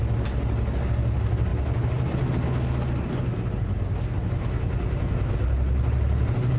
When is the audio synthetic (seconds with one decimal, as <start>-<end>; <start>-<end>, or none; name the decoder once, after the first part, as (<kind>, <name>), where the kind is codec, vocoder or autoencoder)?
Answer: none